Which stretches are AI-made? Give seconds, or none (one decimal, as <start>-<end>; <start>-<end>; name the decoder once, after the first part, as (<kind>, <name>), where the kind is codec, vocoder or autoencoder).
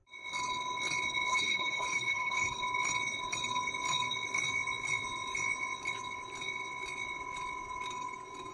1.3-2.6 (codec, HILCodec)